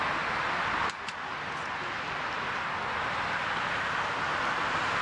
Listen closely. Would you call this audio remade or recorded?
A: recorded